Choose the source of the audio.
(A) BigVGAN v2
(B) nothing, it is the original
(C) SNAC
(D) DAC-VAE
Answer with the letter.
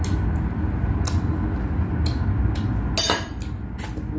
B